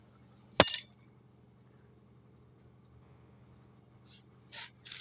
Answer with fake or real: real